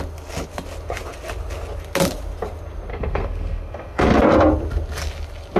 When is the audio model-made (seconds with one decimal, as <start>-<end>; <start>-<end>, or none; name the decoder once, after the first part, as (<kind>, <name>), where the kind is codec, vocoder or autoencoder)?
2.9-4.0 (codec, SNAC)